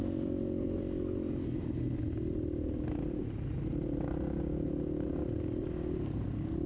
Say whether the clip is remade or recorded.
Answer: recorded